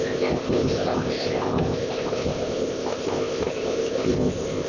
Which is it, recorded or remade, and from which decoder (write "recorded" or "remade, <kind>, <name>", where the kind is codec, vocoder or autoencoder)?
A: remade, codec, ZipCodec